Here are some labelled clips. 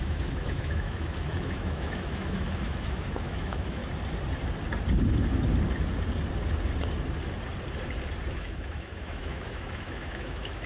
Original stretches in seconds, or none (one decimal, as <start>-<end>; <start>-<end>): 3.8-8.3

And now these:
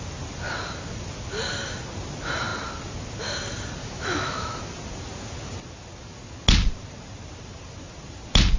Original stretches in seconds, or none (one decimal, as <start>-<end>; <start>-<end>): 0.0-3.8; 4.6-8.6

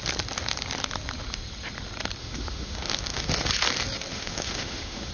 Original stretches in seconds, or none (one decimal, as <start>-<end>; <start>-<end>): 0.0-2.2; 3.3-4.1

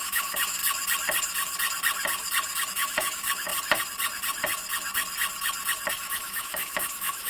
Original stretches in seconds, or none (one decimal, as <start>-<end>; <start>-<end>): 0.6-2.7; 3.5-5.9